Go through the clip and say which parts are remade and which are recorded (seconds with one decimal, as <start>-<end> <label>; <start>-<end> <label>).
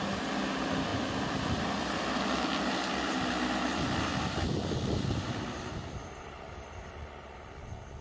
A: 0.0-0.9 recorded; 0.9-2.6 remade; 2.6-3.7 recorded; 3.7-6.9 remade; 6.9-8.0 recorded